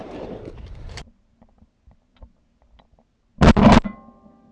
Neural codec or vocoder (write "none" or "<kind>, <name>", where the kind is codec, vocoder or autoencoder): none